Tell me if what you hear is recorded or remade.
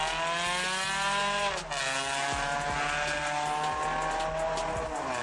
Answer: recorded